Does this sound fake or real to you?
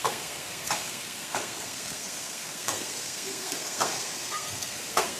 fake